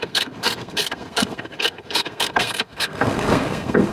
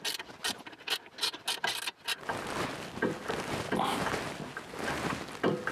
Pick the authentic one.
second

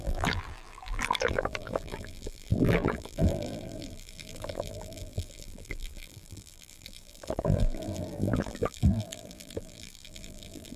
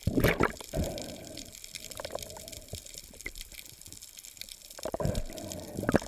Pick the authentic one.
second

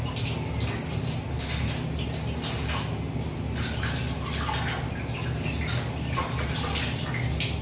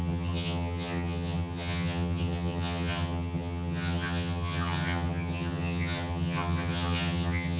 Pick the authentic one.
first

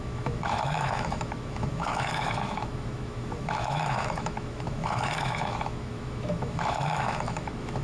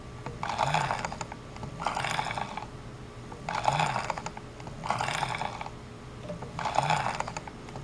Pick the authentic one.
second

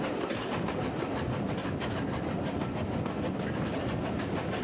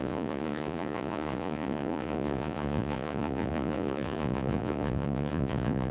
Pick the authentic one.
first